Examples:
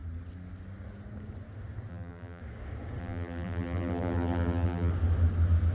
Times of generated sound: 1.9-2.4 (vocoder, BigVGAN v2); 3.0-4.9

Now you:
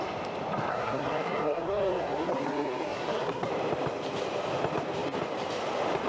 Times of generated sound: 0.7-3.5 (codec, SNAC)

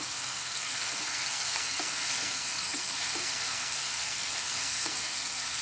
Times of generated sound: 0.0-5.6 (codec, SNAC)

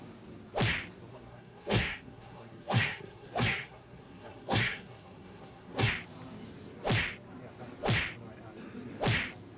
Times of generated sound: 1.1-5.9 (codec, SNAC)

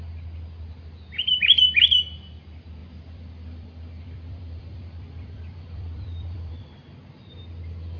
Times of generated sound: 2.8-7.4 (vocoder, BigVGAN v2)